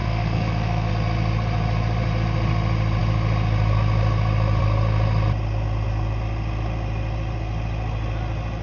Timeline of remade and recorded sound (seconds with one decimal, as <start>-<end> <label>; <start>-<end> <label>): 0.0-0.9 remade; 0.9-8.6 recorded